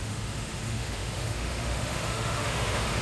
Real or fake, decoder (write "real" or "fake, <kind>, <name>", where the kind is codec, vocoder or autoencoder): fake, autoencoder, DAC-VAE